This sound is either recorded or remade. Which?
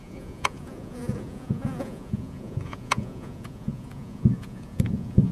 remade